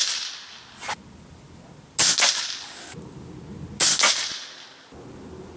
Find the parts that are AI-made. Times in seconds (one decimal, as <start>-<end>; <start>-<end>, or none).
none